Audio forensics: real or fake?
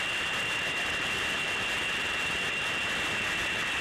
fake